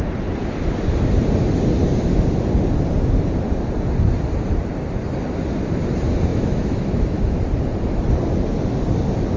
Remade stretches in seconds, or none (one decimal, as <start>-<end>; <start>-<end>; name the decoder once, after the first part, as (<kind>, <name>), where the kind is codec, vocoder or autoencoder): 6.3-7.4 (autoencoder, DAC-VAE)